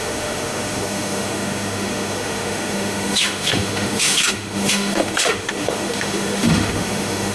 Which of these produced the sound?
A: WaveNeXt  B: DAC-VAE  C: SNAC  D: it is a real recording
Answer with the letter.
B